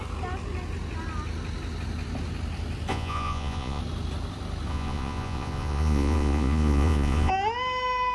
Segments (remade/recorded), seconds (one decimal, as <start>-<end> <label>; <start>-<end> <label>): 0.0-2.9 recorded; 2.9-3.8 remade; 3.8-4.7 recorded; 4.7-7.3 remade; 7.3-8.1 recorded